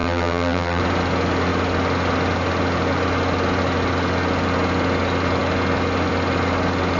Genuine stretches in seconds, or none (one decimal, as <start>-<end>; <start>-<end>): 0.8-7.0